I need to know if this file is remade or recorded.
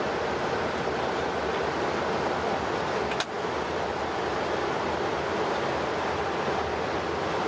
recorded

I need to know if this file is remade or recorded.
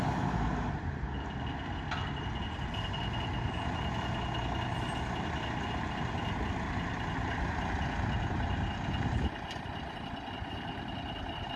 recorded